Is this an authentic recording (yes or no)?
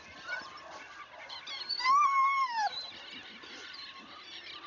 no